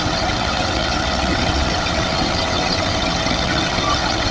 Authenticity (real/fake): fake